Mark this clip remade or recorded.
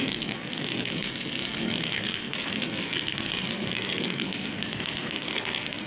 remade